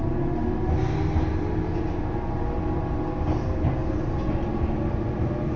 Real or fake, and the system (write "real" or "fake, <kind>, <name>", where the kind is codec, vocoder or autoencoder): real